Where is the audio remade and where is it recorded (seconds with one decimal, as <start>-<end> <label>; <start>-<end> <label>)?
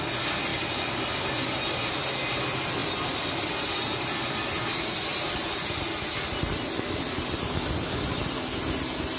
0.0-0.5 recorded; 0.5-1.3 remade; 1.3-2.8 recorded; 2.8-4.7 remade; 4.7-9.2 recorded